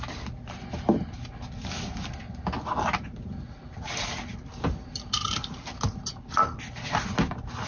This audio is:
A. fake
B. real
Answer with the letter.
B